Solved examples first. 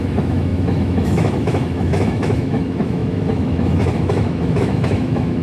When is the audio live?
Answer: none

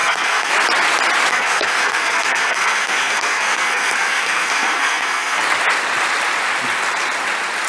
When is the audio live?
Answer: 0.5-1.3; 5.4-7.7

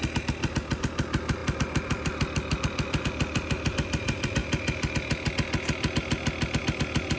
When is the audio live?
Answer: 4.4-6.6

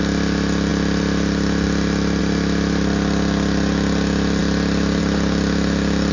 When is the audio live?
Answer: 0.0-6.1

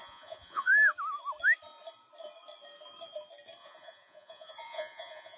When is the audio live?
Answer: 0.7-3.6

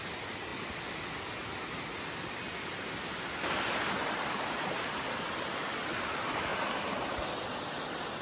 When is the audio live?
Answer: 0.0-8.2

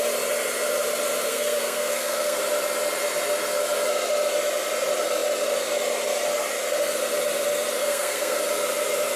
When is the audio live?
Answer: 0.0-1.3; 2.4-7.8; 8.4-9.2

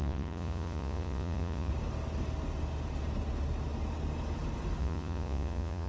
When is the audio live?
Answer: 1.7-4.8